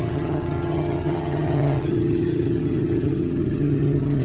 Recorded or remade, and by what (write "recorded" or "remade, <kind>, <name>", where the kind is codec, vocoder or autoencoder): remade, vocoder, HiFi-GAN